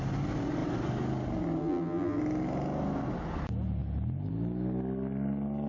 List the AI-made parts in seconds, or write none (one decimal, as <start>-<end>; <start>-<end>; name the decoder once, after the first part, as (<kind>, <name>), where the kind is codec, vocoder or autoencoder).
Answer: 1.6-2.2 (vocoder, BigVGAN v2)